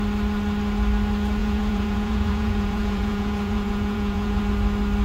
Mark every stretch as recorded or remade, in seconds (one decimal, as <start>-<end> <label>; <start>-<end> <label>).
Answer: 0.0-1.4 recorded; 1.4-4.4 remade; 4.4-5.0 recorded